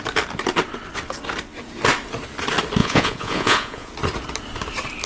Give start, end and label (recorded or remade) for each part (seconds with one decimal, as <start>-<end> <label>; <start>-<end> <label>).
0.0-2.8 recorded; 2.8-3.9 remade; 3.9-5.1 recorded